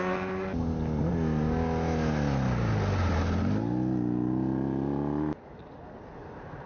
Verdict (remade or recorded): recorded